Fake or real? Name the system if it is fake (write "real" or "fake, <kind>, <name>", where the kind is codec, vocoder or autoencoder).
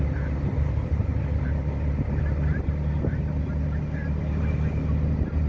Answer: real